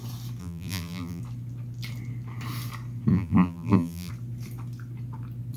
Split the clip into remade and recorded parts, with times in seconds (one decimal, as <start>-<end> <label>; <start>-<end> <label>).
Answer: 0.0-0.4 recorded; 0.4-1.2 remade; 1.2-3.1 recorded; 3.1-4.1 remade; 4.1-5.6 recorded